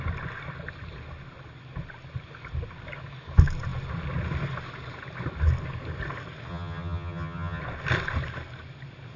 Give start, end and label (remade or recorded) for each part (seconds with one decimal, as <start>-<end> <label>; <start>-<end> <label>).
0.0-6.5 recorded; 6.5-7.6 remade; 7.6-9.2 recorded